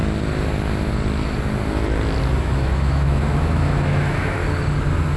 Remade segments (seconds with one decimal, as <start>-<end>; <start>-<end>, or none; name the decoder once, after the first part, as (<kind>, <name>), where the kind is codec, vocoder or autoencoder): 2.4-4.4 (autoencoder, DAC-VAE)